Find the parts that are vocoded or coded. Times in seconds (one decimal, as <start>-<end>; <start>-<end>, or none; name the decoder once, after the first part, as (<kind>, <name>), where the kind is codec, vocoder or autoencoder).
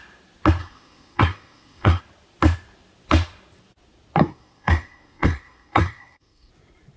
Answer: 0.6-2.0 (codec, SNAC); 4.2-6.5